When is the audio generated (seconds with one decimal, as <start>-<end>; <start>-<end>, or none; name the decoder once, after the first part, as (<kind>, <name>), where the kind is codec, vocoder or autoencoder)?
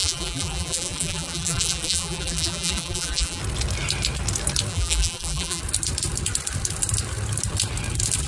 0.0-3.4 (vocoder, BigVGAN v2); 4.7-5.6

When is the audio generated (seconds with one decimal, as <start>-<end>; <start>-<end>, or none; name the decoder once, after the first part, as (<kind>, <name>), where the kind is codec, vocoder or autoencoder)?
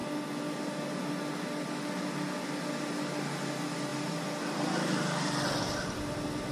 none